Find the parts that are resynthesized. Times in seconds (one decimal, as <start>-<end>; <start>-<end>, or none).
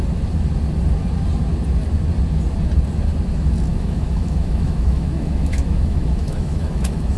3.7-7.2